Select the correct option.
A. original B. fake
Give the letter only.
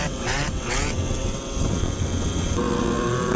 B